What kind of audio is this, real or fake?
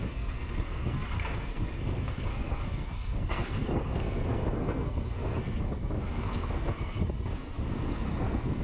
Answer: fake